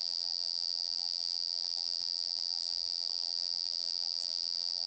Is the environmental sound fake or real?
fake